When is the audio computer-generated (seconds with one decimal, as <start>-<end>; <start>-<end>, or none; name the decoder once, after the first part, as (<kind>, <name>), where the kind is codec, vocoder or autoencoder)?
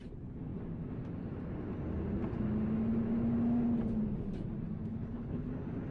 4.9-5.5 (codec, HILCodec)